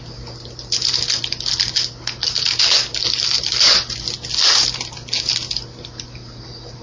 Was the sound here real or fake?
real